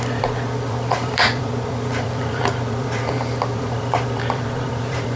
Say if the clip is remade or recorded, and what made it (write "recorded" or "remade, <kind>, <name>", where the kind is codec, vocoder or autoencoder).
remade, vocoder, BigVGAN v2